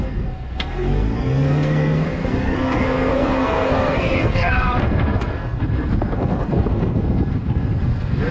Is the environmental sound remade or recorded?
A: remade